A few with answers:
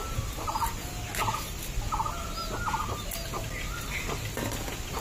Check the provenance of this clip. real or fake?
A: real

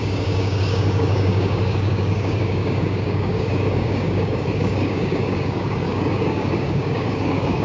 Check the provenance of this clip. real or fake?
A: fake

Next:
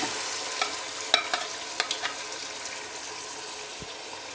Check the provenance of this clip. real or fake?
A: real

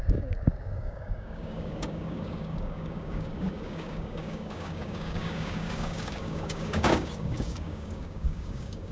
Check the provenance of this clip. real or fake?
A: fake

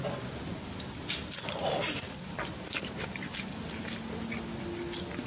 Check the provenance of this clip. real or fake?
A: real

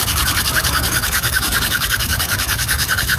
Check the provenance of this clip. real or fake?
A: fake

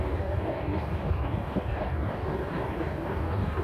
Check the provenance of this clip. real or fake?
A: fake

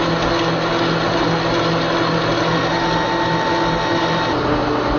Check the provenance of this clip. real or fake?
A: real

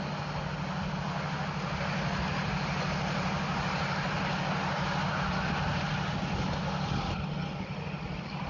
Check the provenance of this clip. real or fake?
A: real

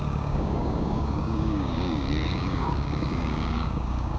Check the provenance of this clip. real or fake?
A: fake